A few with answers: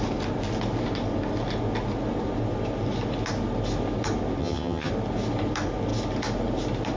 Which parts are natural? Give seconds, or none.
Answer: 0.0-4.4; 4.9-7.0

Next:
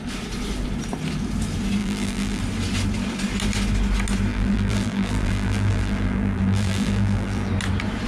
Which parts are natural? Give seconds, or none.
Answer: 0.0-1.8; 2.4-4.3; 7.5-8.1